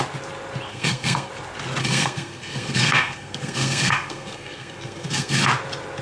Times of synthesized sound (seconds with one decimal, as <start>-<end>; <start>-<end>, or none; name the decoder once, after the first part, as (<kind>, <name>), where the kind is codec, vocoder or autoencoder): 0.7-1.3 (codec, SNAC); 1.8-5.4